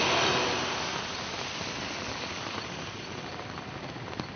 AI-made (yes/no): no